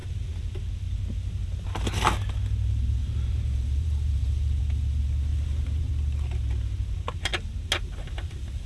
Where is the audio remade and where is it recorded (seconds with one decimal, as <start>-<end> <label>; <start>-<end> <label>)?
0.0-3.0 recorded; 3.0-4.6 remade; 4.6-5.3 recorded; 5.3-5.9 remade; 5.9-8.7 recorded